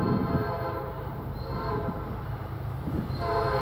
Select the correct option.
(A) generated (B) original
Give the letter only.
A